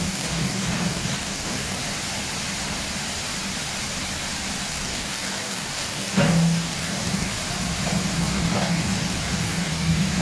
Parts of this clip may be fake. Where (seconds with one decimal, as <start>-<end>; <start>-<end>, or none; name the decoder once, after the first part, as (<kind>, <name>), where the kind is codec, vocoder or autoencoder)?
0.0-1.8 (codec, DAC); 4.7-7.3; 8.2-10.2